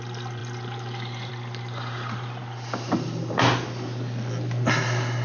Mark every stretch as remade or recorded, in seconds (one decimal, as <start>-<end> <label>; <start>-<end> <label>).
0.0-5.2 recorded